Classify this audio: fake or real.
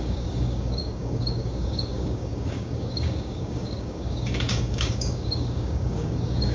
fake